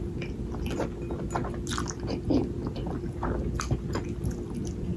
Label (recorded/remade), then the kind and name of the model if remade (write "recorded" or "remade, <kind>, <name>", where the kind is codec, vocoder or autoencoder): recorded